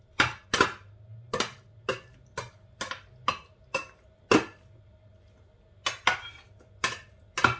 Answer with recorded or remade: recorded